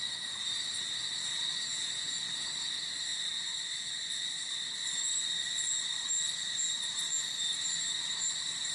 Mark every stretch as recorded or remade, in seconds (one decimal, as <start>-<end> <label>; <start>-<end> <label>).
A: 0.0-1.7 recorded; 1.7-2.2 remade; 2.2-8.7 recorded